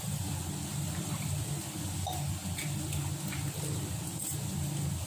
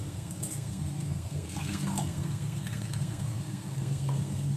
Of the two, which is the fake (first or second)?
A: second